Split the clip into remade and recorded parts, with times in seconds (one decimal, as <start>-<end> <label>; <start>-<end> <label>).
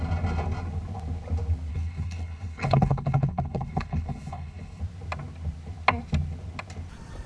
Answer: 0.0-1.7 recorded; 1.7-4.8 remade; 4.8-7.3 recorded